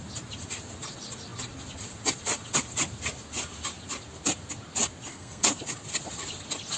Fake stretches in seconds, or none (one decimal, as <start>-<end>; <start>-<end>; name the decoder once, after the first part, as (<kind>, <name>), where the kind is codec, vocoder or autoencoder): 5.1-5.6 (codec, SNAC)